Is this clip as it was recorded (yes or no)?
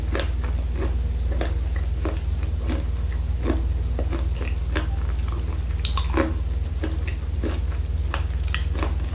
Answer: yes